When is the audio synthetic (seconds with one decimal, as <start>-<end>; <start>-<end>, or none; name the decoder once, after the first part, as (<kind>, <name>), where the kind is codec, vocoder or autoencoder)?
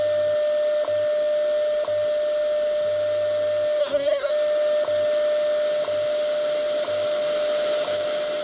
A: 3.8-4.3 (codec, SNAC)